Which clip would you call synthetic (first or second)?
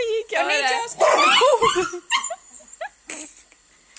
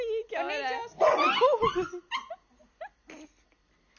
first